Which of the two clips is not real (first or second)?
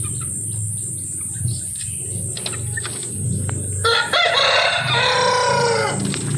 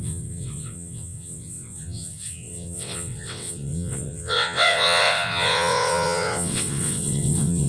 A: second